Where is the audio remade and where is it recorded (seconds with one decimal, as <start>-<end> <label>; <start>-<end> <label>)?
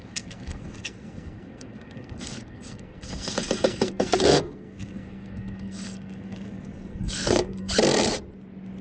0.0-7.7 remade; 7.7-8.8 recorded